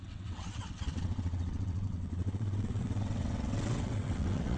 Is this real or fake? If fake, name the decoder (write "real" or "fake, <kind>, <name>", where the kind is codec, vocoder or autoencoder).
fake, vocoder, WaveNeXt